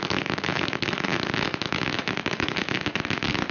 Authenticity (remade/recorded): remade